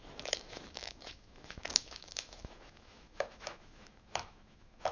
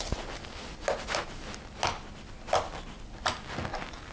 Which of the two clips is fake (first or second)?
first